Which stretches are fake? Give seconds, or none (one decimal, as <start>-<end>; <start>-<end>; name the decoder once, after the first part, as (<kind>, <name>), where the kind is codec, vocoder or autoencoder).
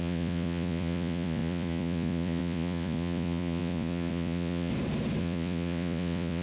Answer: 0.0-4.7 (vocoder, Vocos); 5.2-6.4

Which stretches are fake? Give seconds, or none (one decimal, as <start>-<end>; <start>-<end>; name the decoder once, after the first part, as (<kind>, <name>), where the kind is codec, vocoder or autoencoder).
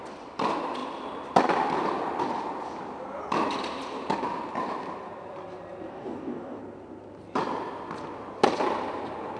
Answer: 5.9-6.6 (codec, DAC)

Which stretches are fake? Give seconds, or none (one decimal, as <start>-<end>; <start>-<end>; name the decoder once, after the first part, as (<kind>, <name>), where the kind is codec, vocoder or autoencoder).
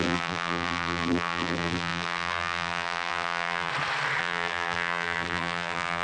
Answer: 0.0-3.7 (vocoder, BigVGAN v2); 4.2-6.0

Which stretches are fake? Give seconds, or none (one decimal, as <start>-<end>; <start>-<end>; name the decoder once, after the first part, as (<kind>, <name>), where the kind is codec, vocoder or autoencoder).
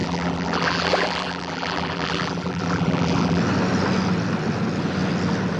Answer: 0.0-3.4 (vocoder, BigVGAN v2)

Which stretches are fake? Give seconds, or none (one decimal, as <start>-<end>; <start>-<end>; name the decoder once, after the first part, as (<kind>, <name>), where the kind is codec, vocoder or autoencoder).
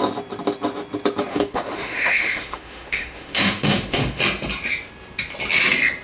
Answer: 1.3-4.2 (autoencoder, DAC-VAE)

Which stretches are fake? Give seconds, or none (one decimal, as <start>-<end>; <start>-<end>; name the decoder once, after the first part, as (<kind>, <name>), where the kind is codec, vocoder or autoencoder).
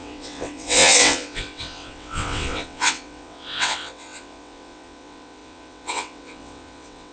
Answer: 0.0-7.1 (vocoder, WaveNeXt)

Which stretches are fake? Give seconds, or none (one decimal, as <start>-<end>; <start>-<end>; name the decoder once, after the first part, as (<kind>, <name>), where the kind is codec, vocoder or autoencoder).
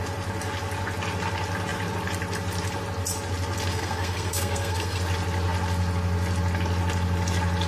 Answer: 3.7-5.0 (codec, SNAC)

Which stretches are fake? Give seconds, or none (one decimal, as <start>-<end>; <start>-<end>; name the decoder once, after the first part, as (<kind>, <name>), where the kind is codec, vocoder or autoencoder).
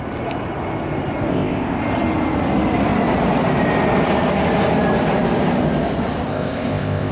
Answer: 1.3-1.8 (codec, ZipCodec); 6.3-7.1